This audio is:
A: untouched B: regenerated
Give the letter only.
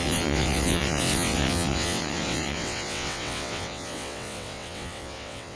B